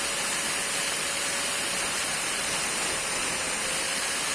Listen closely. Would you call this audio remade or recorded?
recorded